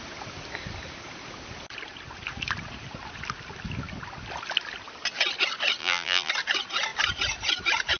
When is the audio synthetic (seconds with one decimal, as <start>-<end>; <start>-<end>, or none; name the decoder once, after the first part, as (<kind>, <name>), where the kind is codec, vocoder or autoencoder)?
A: 5.8-6.3 (vocoder, BigVGAN v2)